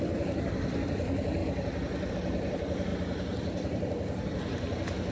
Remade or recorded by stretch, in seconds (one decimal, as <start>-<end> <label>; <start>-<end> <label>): 0.0-1.4 remade; 1.4-2.1 recorded; 2.1-2.9 remade; 2.9-5.1 recorded